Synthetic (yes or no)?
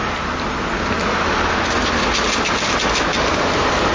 no